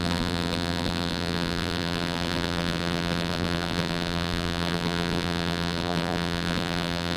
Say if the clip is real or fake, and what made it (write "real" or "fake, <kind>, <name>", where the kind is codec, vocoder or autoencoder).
fake, vocoder, BigVGAN v2